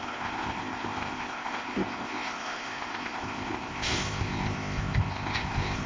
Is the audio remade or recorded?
remade